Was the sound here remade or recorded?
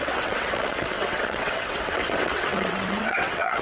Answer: remade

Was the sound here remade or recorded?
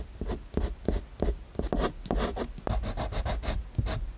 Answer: recorded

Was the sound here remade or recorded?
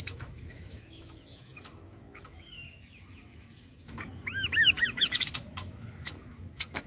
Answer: remade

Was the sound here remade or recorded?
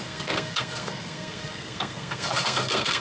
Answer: remade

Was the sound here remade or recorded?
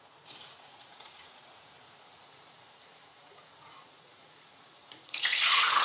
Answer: remade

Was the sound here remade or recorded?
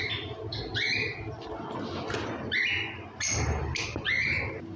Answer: recorded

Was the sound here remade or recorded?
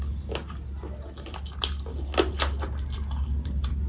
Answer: recorded